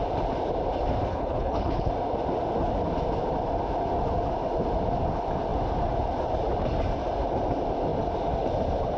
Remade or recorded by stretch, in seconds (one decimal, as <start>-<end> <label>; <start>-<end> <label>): 0.0-1.1 recorded; 1.1-1.9 remade; 1.9-9.0 recorded